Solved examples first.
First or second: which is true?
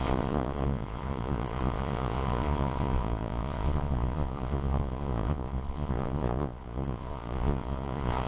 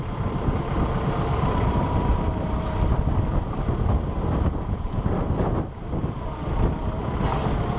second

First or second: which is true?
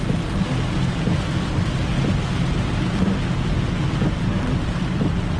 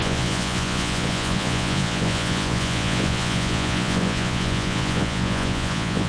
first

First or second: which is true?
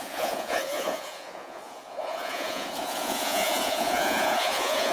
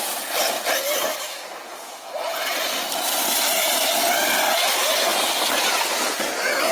second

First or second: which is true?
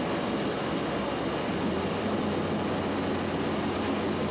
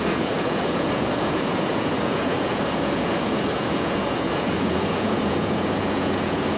first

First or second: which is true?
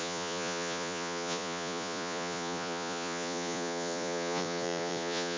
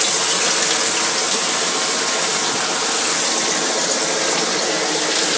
second